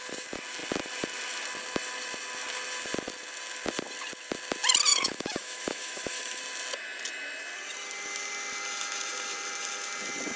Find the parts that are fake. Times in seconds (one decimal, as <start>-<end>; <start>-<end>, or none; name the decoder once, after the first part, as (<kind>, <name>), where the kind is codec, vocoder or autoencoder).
4.9-6.4 (autoencoder, DAC-VAE)